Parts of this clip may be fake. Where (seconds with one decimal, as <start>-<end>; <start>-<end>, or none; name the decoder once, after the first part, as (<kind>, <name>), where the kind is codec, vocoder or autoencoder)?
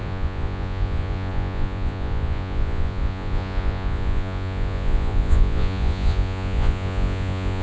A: 0.0-7.6 (vocoder, Vocos)